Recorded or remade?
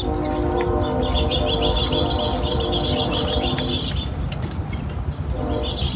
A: recorded